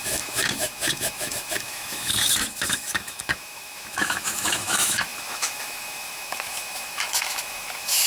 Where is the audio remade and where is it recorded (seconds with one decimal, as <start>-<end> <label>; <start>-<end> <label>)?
0.0-8.1 remade